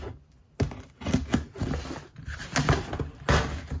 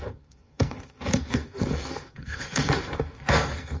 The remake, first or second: second